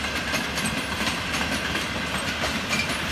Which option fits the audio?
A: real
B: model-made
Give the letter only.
A